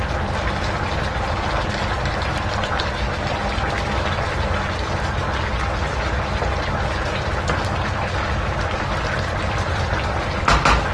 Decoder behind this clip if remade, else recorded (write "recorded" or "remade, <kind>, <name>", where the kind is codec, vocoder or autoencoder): recorded